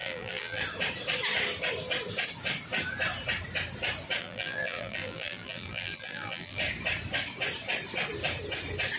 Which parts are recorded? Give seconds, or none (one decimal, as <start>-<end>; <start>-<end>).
0.6-4.2; 6.6-9.0